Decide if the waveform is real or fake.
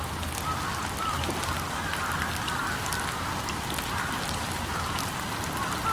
real